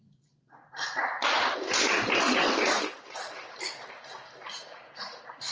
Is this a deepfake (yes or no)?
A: no